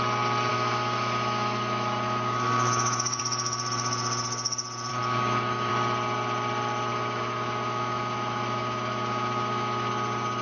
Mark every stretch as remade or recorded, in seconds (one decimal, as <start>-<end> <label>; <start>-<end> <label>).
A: 0.0-0.5 recorded; 0.5-3.2 remade; 3.2-4.9 recorded; 4.9-5.7 remade; 5.7-6.9 recorded; 6.9-9.9 remade; 9.9-10.4 recorded